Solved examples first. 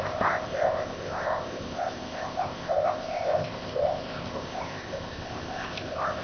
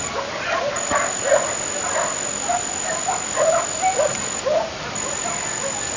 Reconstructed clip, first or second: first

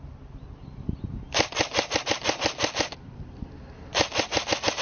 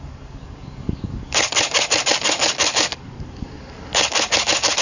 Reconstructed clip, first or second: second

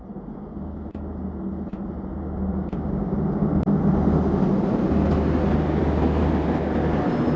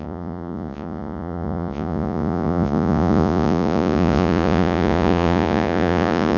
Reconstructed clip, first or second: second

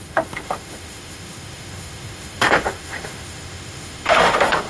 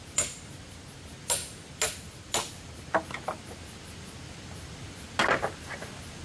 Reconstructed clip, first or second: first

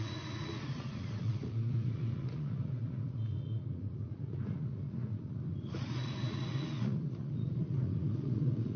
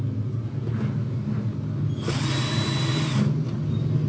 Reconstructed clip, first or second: first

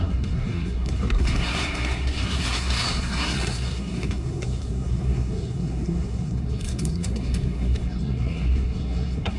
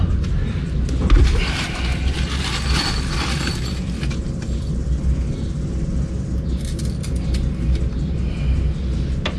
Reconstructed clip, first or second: first